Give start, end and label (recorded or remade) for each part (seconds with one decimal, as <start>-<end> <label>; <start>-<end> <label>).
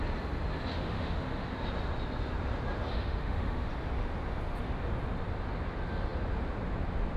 0.0-0.7 recorded; 0.7-1.5 remade; 1.5-2.9 recorded; 2.9-3.7 remade; 3.7-7.2 recorded